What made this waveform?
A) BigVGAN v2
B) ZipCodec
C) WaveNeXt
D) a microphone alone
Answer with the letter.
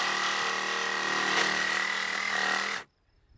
D